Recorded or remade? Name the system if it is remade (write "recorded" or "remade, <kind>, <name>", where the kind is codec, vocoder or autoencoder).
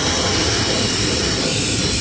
recorded